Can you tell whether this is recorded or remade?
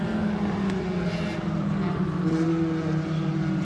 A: recorded